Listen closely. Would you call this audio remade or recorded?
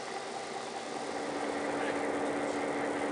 recorded